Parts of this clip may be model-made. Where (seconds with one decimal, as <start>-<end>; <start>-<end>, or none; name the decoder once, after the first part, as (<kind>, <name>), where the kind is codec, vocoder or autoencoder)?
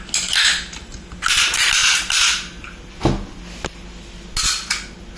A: none